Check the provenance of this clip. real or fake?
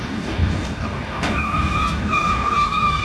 fake